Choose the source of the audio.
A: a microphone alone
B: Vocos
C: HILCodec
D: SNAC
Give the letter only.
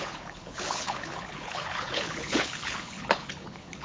C